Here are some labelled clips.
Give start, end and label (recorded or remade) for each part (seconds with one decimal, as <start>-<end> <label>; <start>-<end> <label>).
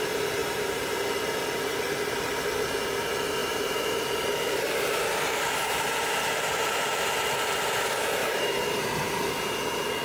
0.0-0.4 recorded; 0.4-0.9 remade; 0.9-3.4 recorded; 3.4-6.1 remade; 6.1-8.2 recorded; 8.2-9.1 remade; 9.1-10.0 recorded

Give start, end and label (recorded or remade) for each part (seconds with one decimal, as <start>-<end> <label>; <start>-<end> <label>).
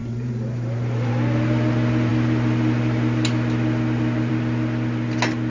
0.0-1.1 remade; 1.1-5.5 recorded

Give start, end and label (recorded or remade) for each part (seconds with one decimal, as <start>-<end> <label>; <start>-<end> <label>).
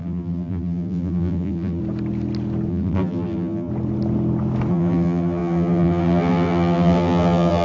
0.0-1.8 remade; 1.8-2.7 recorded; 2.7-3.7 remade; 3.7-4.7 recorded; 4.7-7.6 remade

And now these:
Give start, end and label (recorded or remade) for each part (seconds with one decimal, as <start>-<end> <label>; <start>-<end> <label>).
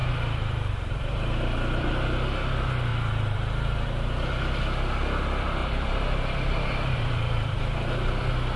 0.0-1.9 remade; 1.9-2.9 recorded; 2.9-4.6 remade; 4.6-5.6 recorded; 5.6-8.2 remade; 8.2-8.6 recorded